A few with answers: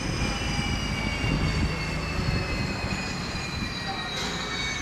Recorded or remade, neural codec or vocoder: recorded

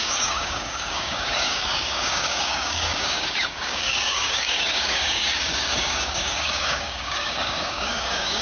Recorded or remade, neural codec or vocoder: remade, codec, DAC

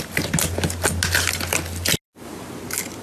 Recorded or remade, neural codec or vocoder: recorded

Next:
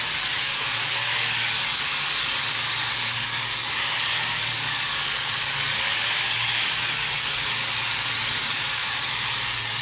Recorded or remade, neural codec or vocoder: remade, codec, DAC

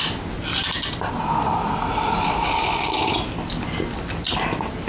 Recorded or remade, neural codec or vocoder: recorded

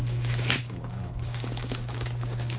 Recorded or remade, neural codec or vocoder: remade, codec, DAC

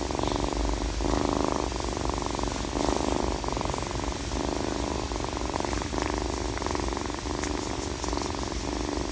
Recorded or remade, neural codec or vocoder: recorded